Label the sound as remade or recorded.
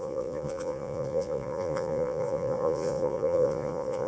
remade